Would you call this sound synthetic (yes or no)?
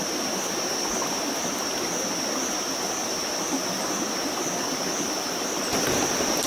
no